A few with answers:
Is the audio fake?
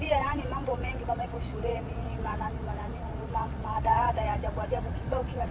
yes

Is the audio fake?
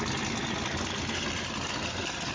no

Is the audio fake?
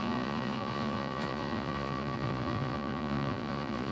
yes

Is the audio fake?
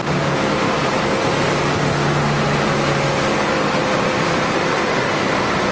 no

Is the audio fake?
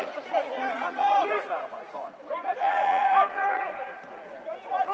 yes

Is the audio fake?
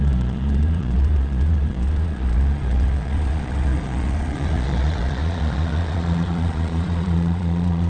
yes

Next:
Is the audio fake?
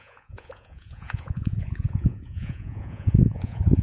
yes